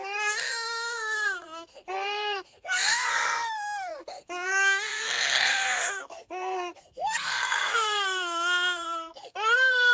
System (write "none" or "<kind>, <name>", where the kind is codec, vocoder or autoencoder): codec, SNAC